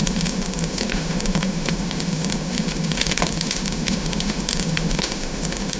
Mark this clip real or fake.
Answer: fake